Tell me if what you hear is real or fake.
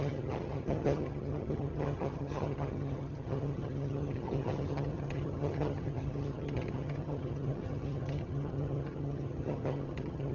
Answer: fake